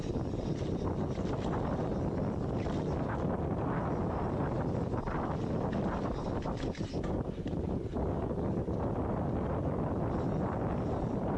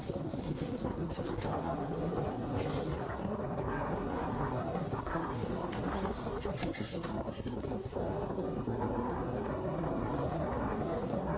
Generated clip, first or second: second